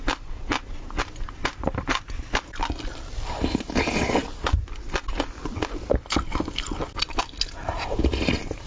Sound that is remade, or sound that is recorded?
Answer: recorded